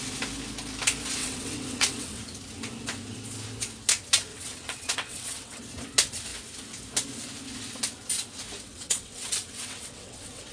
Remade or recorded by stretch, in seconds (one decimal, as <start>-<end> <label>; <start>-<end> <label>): 0.0-1.2 recorded; 1.2-2.2 remade; 2.2-4.3 recorded; 4.3-5.6 remade; 5.6-8.7 recorded; 8.7-10.5 remade